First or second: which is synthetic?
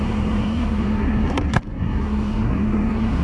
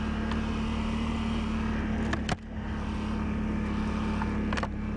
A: first